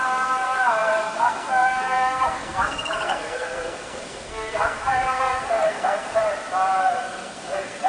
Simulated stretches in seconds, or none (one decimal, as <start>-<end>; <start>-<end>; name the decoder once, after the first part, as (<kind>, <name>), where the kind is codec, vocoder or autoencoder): 0.0-6.2 (codec, SNAC); 6.8-7.9